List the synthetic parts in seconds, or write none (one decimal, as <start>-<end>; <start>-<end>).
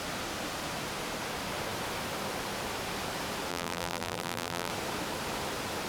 3.5-4.7